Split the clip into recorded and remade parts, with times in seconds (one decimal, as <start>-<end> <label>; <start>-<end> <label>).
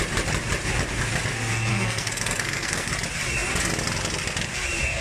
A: 0.0-1.7 recorded; 1.7-2.9 remade; 2.9-5.0 recorded